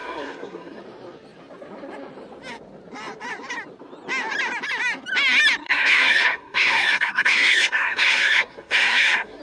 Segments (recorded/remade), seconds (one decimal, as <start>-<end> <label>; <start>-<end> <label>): 0.0-0.8 remade; 0.8-5.6 recorded; 5.6-9.4 remade

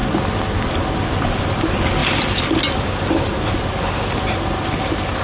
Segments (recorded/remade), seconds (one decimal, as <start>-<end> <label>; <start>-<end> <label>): 0.0-5.2 recorded